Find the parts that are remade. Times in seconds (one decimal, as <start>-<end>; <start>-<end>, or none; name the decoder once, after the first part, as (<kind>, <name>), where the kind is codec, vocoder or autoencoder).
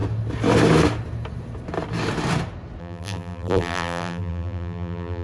2.8-5.2 (vocoder, BigVGAN v2)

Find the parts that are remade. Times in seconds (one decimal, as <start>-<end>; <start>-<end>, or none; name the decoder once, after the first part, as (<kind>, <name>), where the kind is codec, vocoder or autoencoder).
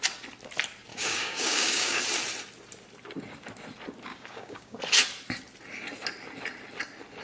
0.9-2.0 (codec, DAC); 4.1-4.8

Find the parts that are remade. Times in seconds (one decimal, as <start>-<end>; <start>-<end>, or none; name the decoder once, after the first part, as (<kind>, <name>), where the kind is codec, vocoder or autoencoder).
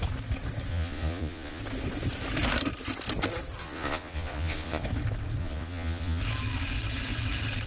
0.7-1.6 (vocoder, Vocos); 3.6-4.8; 5.4-6.2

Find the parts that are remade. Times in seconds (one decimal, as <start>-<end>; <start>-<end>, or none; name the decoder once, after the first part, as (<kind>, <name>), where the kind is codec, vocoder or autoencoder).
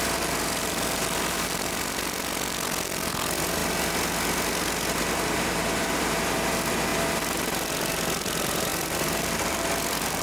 0.0-10.2 (vocoder, BigVGAN v2)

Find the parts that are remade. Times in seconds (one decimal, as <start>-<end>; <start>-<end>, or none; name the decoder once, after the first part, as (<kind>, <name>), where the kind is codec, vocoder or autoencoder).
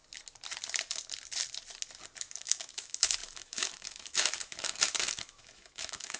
2.2-6.2 (autoencoder, DAC-VAE)